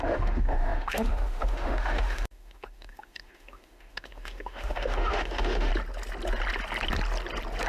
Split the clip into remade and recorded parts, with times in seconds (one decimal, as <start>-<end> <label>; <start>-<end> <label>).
0.0-5.7 remade; 5.7-7.7 recorded